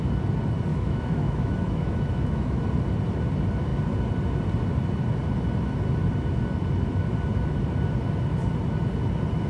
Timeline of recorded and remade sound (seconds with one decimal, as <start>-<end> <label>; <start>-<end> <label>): 0.0-0.7 recorded; 0.7-2.6 remade; 2.6-9.5 recorded